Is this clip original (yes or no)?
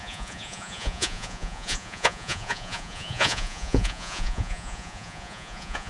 no